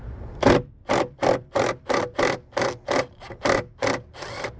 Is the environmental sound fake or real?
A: real